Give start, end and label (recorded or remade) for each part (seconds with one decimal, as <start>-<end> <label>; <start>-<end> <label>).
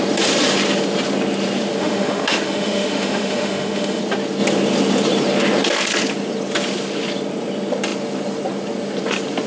0.0-1.8 recorded; 1.8-4.0 remade; 4.0-9.5 recorded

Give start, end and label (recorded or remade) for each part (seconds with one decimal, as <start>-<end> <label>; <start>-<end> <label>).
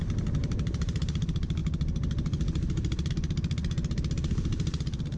0.0-0.4 recorded; 0.4-1.0 remade; 1.0-5.2 recorded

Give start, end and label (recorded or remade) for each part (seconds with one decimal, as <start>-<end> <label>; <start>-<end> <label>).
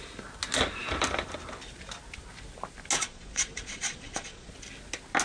0.0-3.0 recorded; 3.0-4.5 remade; 4.5-5.2 recorded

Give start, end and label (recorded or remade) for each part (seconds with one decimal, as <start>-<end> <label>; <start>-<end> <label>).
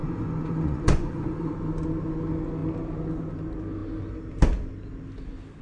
0.0-1.5 remade; 1.5-5.6 recorded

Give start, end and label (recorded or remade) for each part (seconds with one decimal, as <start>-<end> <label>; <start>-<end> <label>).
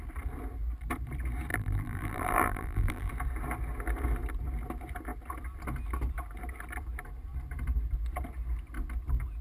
0.0-1.5 recorded; 1.5-3.1 remade; 3.1-9.4 recorded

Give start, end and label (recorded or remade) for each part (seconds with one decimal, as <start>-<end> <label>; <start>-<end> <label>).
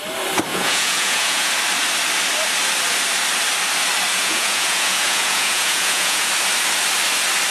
0.0-0.5 recorded; 0.5-1.5 remade; 1.5-4.1 recorded; 4.1-6.3 remade; 6.3-7.5 recorded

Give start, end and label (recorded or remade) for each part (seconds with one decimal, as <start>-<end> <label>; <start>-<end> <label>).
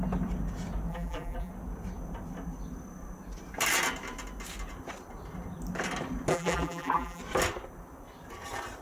0.0-0.9 recorded; 0.9-1.5 remade; 1.5-6.3 recorded; 6.3-7.2 remade; 7.2-8.8 recorded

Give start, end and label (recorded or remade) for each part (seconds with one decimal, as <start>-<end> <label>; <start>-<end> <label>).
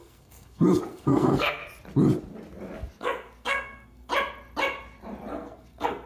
0.0-1.6 remade; 1.6-3.0 recorded; 3.0-4.1 remade; 4.1-5.3 recorded; 5.3-6.1 remade